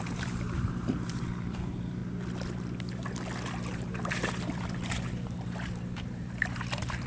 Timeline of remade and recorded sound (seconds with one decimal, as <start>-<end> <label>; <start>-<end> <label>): 0.0-2.0 remade; 2.0-3.6 recorded; 3.6-7.1 remade